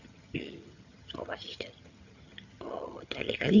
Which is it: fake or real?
fake